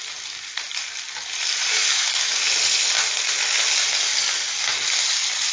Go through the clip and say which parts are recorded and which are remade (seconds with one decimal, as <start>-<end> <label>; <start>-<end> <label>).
0.0-1.7 recorded; 1.7-2.3 remade; 2.3-5.5 recorded